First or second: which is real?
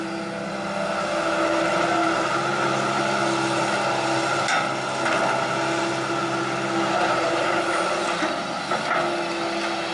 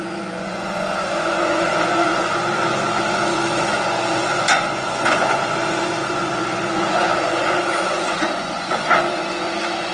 first